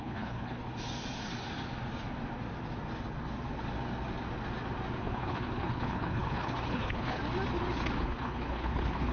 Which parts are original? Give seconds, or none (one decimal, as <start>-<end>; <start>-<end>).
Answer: 0.6-5.0; 7.2-8.0